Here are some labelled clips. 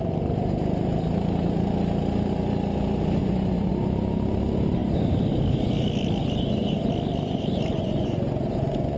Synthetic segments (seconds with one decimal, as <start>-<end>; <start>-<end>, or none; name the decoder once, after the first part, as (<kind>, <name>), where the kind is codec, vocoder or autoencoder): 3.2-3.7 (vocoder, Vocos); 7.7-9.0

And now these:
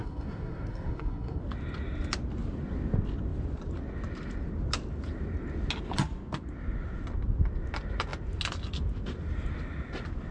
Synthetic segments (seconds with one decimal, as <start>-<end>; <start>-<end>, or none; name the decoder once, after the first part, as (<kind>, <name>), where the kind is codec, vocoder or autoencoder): 0.0-1.4 (codec, SNAC)

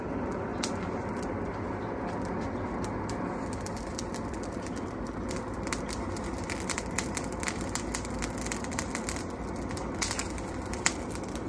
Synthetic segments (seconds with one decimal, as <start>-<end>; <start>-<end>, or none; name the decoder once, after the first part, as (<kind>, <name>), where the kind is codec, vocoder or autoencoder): none

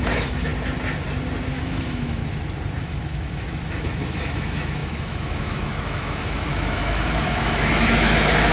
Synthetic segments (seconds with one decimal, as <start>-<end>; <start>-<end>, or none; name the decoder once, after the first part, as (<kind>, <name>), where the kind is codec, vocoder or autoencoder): 0.0-0.5 (autoencoder, DAC-VAE); 1.6-2.2; 2.8-8.5

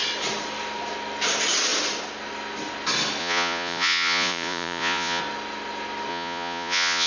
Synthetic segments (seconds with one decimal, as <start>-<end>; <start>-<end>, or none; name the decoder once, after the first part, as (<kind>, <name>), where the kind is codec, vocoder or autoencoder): 3.2-5.2 (vocoder, Vocos); 6.1-7.1

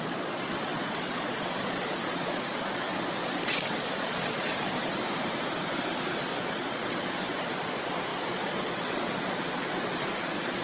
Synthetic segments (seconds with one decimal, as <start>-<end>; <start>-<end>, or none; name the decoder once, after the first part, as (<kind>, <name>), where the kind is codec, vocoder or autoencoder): 0.0-4.8 (vocoder, Vocos); 6.4-10.6